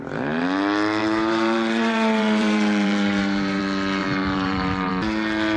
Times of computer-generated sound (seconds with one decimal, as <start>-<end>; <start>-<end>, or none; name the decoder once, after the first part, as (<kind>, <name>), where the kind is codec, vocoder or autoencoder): 1.0-3.6 (vocoder, BigVGAN v2); 4.0-4.9